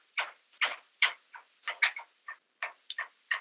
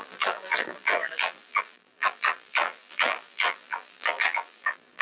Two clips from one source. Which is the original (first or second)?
first